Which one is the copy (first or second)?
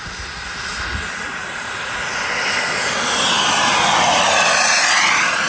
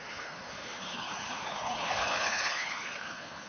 second